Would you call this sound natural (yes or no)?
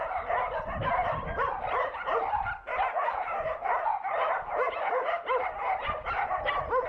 yes